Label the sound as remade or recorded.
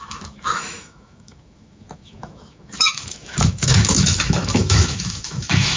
remade